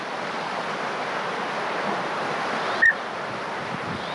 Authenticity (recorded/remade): recorded